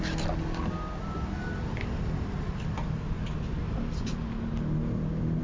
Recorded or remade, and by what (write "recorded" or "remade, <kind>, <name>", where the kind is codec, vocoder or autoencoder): recorded